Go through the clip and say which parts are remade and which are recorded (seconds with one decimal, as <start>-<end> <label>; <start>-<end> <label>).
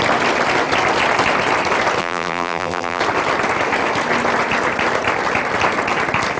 0.0-2.0 recorded; 2.0-3.0 remade; 3.0-6.4 recorded